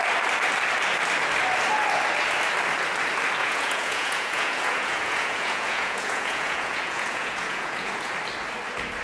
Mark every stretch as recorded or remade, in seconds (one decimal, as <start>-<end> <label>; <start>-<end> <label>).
0.0-3.4 recorded; 3.4-8.1 remade; 8.1-9.0 recorded